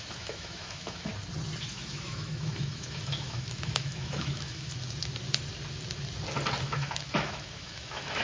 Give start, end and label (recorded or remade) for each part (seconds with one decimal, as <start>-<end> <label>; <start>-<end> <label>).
0.0-1.1 remade; 1.1-1.7 recorded; 1.7-4.7 remade; 4.7-6.6 recorded; 6.6-8.2 remade